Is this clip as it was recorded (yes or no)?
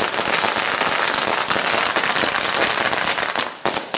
yes